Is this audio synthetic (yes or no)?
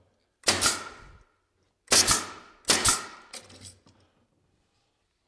no